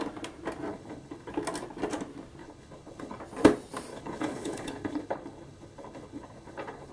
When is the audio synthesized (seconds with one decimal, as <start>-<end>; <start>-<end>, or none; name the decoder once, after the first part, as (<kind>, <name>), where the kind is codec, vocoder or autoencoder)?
0.7-1.3 (codec, HILCodec); 2.4-3.2; 3.9-6.9